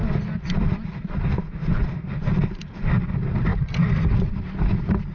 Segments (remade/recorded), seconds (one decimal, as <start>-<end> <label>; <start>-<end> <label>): 0.0-5.1 recorded